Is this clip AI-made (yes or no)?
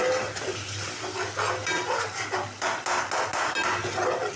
no